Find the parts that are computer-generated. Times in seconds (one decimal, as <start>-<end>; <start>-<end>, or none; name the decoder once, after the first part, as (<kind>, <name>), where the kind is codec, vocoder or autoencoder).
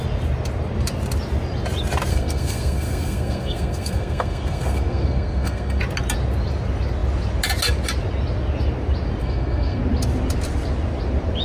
2.1-5.8 (codec, SNAC); 9.2-9.8